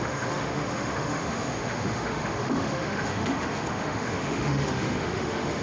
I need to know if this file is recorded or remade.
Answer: remade